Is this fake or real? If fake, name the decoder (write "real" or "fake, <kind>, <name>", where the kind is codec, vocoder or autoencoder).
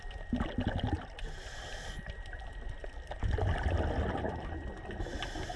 real